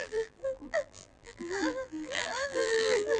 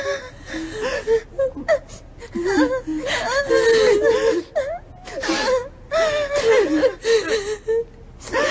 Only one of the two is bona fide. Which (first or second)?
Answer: second